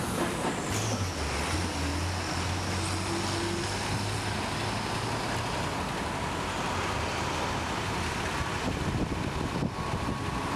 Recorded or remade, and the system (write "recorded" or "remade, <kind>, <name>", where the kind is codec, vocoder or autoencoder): recorded